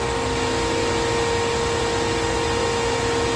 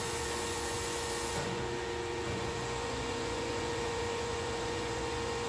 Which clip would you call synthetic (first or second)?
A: second